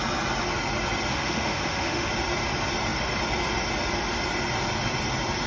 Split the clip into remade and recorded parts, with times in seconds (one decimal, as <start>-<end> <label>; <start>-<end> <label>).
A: 0.0-1.1 recorded; 1.1-2.1 remade; 2.1-5.5 recorded